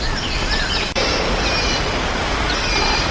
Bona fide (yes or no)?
yes